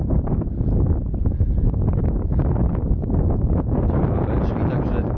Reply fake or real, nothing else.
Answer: real